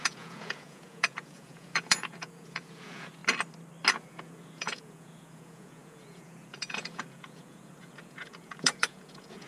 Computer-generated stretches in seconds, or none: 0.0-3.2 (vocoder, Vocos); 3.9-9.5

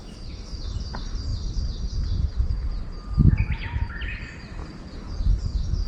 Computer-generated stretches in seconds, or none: 0.0-0.6 (autoencoder, DAC-VAE)

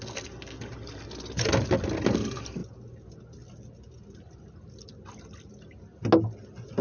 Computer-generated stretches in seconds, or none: none

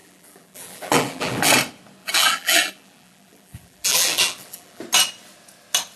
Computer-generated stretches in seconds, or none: 0.0-1.5 (vocoder, BigVGAN v2); 2.0-4.8

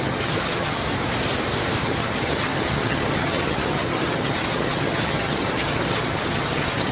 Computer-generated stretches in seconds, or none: 0.0-0.8 (vocoder, HiFi-GAN); 1.8-6.9

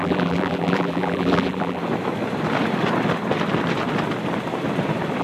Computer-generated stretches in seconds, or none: 0.0-1.8 (vocoder, BigVGAN v2)

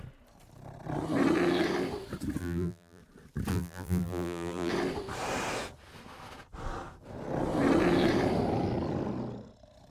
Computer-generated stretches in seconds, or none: 2.4-3.0 (vocoder, BigVGAN v2); 3.5-4.7

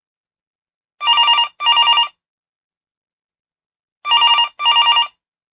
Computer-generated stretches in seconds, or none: none